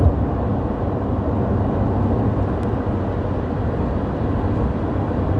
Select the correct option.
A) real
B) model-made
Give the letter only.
A